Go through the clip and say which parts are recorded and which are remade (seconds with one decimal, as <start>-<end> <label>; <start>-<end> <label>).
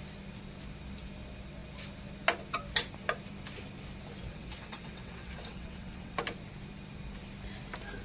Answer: 0.0-4.2 recorded; 4.2-6.2 remade; 6.2-8.0 recorded